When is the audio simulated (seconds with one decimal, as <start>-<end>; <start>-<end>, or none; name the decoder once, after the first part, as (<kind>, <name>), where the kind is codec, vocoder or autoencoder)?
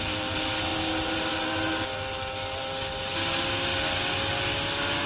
none